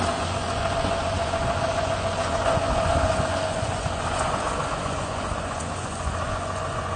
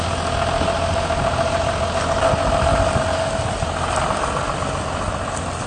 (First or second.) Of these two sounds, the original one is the second